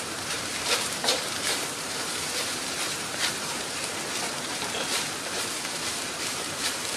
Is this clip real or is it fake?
fake